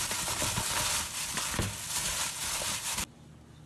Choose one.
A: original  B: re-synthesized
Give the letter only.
A